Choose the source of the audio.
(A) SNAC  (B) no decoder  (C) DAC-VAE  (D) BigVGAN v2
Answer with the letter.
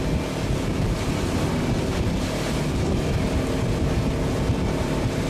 B